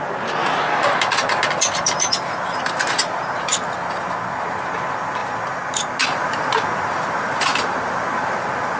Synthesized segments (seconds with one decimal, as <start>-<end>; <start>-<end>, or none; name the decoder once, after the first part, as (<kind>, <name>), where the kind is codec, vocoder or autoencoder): none